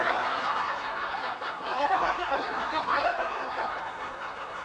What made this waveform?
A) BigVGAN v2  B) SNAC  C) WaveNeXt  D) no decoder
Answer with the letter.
B